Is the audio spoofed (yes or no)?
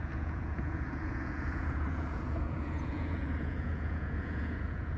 yes